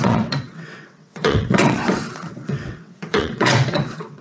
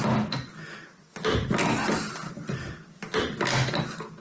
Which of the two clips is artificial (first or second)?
first